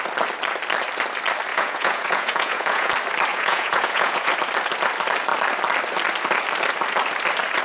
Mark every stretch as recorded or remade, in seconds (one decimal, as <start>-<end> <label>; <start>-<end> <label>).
0.0-1.5 recorded; 1.5-2.9 remade; 2.9-3.3 recorded; 3.3-4.3 remade; 4.3-7.6 recorded